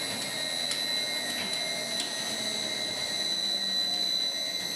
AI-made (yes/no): no